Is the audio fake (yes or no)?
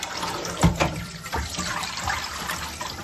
yes